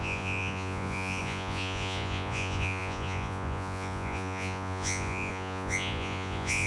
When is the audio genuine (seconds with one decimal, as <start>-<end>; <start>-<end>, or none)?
none